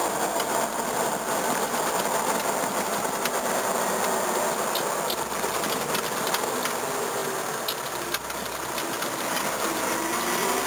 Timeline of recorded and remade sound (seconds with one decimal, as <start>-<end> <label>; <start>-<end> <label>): 0.0-10.7 recorded